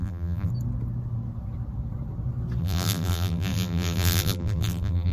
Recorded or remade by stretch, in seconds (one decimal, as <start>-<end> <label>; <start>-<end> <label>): 0.0-0.5 remade; 0.5-2.6 recorded; 2.6-5.1 remade